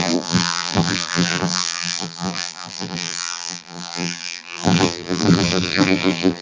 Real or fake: fake